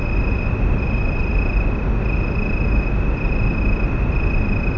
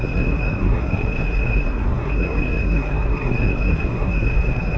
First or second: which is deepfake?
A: second